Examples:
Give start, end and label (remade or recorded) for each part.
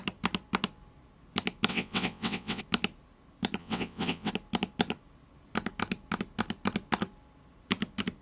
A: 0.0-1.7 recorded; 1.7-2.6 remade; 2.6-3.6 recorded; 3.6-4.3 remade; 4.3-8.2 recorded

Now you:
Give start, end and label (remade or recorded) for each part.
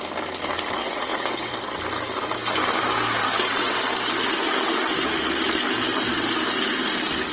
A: 0.0-0.8 recorded; 0.8-1.5 remade; 1.5-3.2 recorded; 3.2-3.8 remade; 3.8-7.3 recorded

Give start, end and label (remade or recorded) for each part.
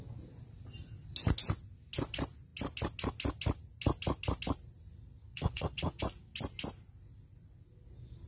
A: 0.0-5.3 recorded; 5.3-6.0 remade; 6.0-8.3 recorded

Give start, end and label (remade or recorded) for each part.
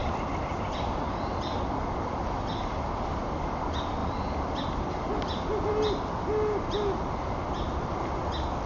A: 0.0-8.7 recorded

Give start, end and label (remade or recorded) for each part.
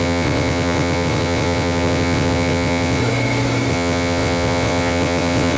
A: 0.0-3.0 remade; 3.0-3.7 recorded; 3.7-5.6 remade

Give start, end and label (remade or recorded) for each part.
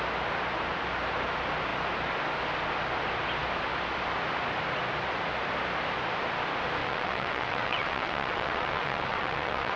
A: 0.0-6.8 recorded; 6.8-9.8 remade